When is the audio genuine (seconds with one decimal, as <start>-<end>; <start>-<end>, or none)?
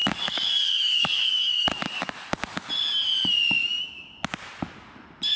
2.7-5.4